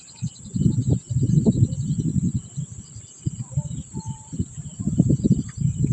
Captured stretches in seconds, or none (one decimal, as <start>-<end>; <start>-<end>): 0.0-5.9

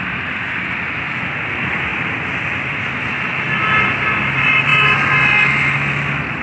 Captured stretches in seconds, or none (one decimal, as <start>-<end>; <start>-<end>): 0.0-6.4

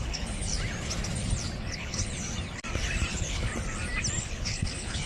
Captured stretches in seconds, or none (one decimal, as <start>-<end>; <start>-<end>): 0.5-1.7; 2.1-3.1; 3.5-4.2